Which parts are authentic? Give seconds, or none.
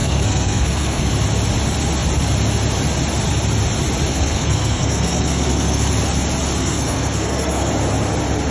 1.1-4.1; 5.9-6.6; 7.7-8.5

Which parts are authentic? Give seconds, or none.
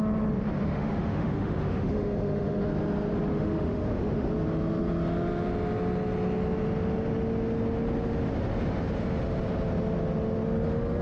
0.0-0.6; 2.7-3.3; 4.3-11.0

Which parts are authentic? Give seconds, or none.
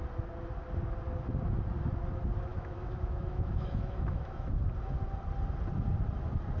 0.0-2.5; 4.5-6.6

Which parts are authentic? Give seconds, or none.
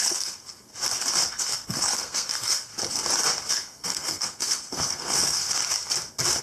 0.7-1.3; 2.7-3.5; 5.6-6.4